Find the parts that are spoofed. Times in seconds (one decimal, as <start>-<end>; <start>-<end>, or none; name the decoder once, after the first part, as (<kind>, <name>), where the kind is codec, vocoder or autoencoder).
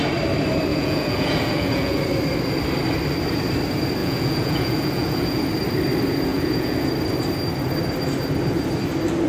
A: 0.7-2.0 (vocoder, Vocos); 4.0-5.4; 6.3-6.9